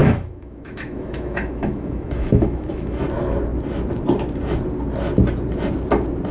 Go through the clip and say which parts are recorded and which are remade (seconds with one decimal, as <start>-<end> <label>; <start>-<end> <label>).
0.0-3.0 remade; 3.0-6.3 recorded